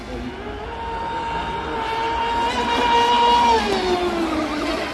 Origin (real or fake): real